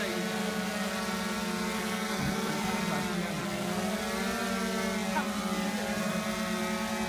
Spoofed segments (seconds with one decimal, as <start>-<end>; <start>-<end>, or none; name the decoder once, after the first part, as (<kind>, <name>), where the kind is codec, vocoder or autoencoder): 0.4-0.9 (codec, SNAC); 1.8-2.8; 3.4-4.0